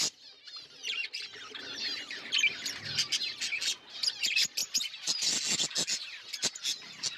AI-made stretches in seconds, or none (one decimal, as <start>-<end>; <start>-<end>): 4.6-5.3